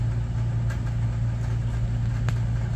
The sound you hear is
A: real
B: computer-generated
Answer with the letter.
A